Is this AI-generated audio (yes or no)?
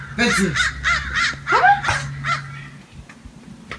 no